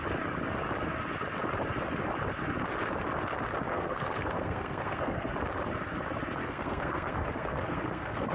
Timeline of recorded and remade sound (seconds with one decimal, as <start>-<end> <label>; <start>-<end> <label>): 0.0-3.7 recorded; 3.7-5.3 remade; 5.3-6.4 recorded; 6.4-8.3 remade